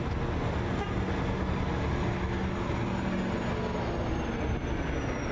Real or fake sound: real